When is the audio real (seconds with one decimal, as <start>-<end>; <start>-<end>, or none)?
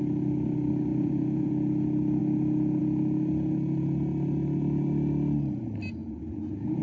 0.0-0.9; 1.5-6.0